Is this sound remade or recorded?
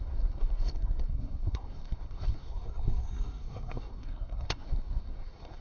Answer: remade